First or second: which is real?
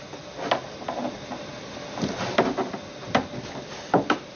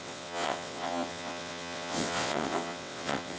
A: first